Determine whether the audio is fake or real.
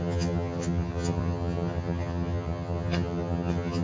fake